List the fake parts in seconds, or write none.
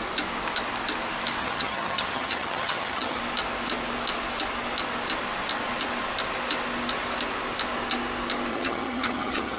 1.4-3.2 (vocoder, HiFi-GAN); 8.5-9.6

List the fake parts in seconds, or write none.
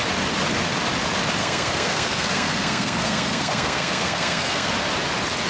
1.4-4.7 (codec, SNAC)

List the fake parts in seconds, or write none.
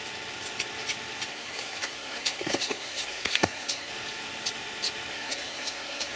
1.3-3.9 (codec, SNAC); 5.1-6.2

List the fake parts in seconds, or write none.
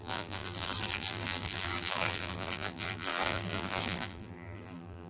0.0-5.1 (vocoder, BigVGAN v2)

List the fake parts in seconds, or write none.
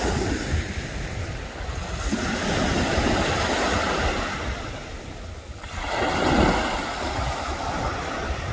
none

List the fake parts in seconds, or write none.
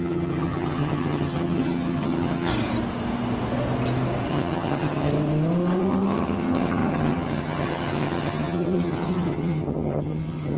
0.0-2.5 (vocoder, HiFi-GAN); 4.3-5.1; 5.8-10.6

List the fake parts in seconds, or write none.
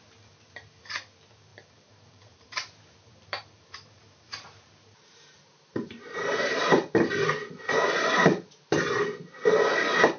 1.5-6.7 (vocoder, BigVGAN v2)